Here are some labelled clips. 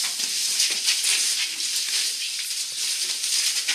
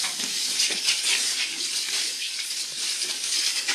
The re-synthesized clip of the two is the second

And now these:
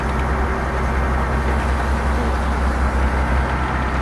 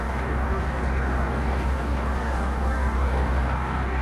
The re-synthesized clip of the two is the second